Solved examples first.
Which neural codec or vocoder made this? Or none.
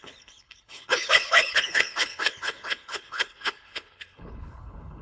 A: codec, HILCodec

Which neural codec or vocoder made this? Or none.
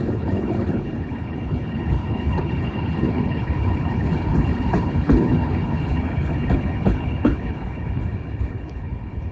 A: codec, HILCodec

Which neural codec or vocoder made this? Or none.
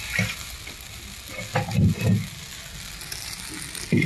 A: none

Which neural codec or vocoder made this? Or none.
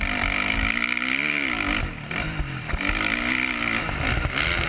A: none